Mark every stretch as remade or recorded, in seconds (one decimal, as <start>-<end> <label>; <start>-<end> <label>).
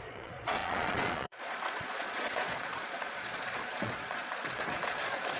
0.0-5.4 remade